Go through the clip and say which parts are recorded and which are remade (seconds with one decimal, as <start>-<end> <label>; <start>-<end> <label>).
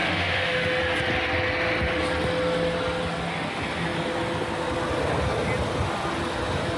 0.0-0.8 remade; 0.8-6.8 recorded